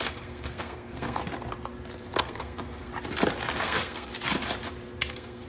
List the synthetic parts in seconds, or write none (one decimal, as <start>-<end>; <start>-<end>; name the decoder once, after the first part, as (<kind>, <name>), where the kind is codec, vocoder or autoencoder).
0.0-1.2 (codec, SNAC); 2.2-2.9; 3.6-4.1; 5.1-5.5